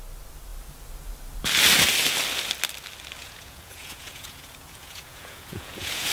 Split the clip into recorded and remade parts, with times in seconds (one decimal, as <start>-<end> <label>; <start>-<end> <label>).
0.0-3.2 recorded; 3.2-6.1 remade

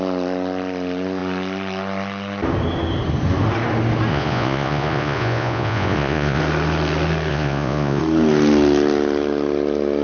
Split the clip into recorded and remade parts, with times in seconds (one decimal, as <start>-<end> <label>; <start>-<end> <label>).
0.0-4.1 recorded; 4.1-6.4 remade; 6.4-7.3 recorded; 7.3-8.0 remade; 8.0-10.0 recorded

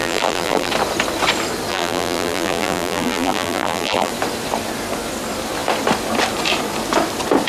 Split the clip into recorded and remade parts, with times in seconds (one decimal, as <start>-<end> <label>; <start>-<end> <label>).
0.0-0.7 remade; 0.7-1.7 recorded; 1.7-4.1 remade; 4.1-7.5 recorded

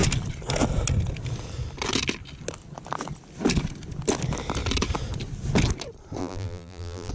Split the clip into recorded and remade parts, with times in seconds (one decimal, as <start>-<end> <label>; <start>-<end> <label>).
0.0-6.2 recorded; 6.2-7.1 remade

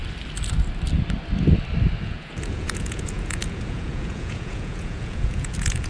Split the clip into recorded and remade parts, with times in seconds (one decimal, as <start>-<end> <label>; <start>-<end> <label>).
0.0-2.0 recorded; 2.0-5.9 remade

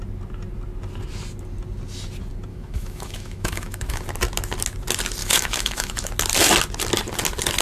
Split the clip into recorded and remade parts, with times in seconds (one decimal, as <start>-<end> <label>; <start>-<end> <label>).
0.0-2.5 recorded; 2.5-4.0 remade; 4.0-5.2 recorded; 5.2-6.0 remade; 6.0-7.6 recorded